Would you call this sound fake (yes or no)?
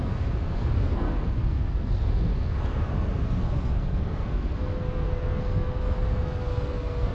yes